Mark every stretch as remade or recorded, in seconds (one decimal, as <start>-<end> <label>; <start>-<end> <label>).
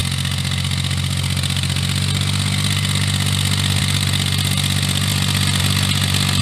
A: 0.0-6.4 recorded